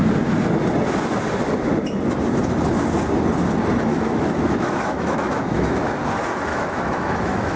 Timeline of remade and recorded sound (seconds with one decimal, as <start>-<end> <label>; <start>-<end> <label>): 0.0-3.9 recorded; 3.9-5.9 remade; 5.9-6.5 recorded; 6.5-7.6 remade